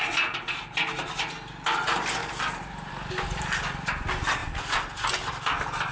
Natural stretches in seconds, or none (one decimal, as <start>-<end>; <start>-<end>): 0.0-2.2; 2.9-5.9